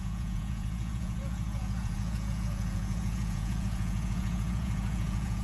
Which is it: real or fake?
fake